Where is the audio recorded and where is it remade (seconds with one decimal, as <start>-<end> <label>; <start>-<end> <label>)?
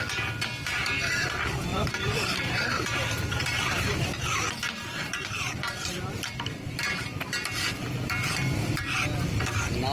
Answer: 0.0-1.7 recorded; 1.7-6.7 remade; 6.7-9.9 recorded